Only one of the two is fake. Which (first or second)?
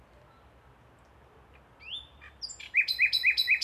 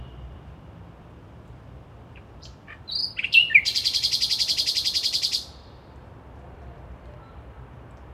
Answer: second